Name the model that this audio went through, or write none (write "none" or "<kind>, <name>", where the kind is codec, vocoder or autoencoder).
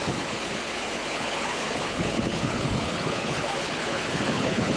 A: codec, HILCodec